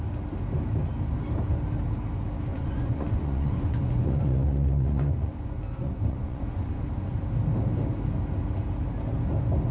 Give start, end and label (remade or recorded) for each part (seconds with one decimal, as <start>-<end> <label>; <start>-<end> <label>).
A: 0.0-2.5 recorded; 2.5-6.8 remade; 6.8-9.7 recorded